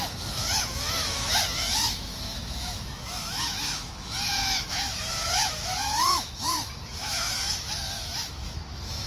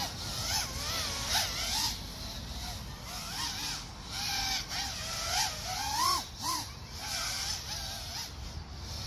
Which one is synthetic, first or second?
first